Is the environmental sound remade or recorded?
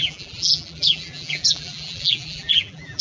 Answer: remade